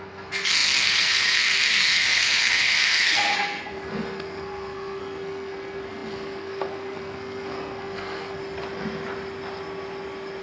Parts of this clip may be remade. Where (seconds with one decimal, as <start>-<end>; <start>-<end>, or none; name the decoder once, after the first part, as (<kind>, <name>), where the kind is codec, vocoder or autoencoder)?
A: 0.0-8.4 (codec, SNAC)